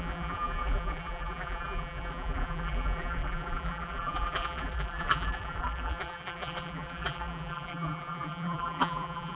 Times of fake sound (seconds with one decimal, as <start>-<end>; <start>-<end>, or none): 0.0-9.4

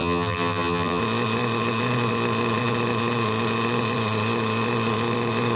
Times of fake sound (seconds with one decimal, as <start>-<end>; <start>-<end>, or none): 0.0-1.0

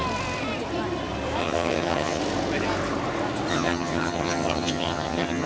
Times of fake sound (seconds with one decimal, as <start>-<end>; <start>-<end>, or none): 1.4-2.2; 3.5-5.5

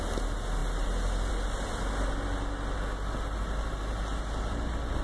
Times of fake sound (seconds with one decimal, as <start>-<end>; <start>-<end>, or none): none

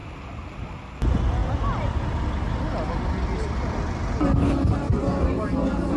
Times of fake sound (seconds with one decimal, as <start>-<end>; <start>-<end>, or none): none